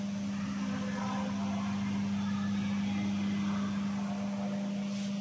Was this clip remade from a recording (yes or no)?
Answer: no